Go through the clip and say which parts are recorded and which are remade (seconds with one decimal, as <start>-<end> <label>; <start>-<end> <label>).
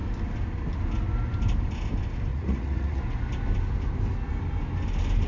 0.0-2.3 recorded; 2.3-3.0 remade; 3.0-5.3 recorded